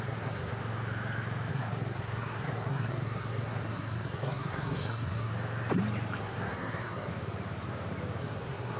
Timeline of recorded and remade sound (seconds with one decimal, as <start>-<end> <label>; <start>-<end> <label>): 0.0-0.6 remade; 0.6-1.5 recorded; 1.5-5.3 remade; 5.3-6.2 recorded; 6.2-7.1 remade; 7.1-8.2 recorded; 8.2-8.8 remade